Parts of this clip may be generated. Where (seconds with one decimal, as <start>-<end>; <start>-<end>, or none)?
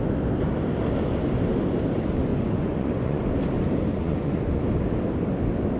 2.3-3.2; 3.9-4.6